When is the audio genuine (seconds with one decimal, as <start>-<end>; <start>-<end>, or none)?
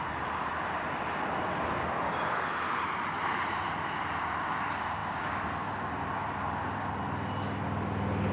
0.0-8.3